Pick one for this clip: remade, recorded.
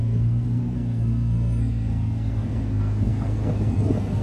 remade